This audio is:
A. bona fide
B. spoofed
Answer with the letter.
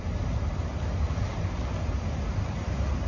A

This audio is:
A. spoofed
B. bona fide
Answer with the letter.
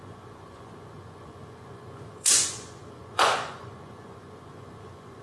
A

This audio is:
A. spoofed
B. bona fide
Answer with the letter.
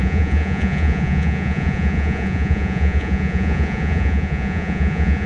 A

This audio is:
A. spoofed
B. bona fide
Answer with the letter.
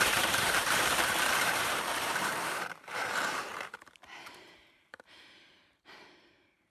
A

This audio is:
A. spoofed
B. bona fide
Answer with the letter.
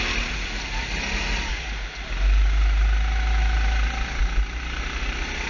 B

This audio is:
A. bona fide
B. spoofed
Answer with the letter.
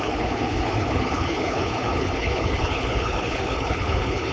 B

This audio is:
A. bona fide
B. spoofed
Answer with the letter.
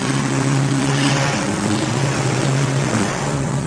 B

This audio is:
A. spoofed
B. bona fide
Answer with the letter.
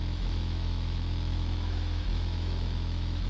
A